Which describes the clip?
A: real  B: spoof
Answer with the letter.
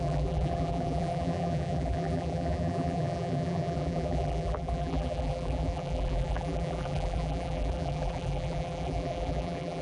B